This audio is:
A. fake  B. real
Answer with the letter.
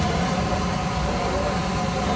B